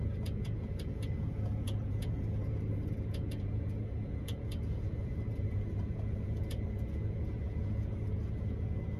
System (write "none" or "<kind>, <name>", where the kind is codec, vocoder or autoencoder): vocoder, Vocos